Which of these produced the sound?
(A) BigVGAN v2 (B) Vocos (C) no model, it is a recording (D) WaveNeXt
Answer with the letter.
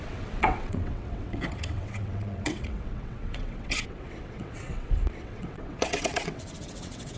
D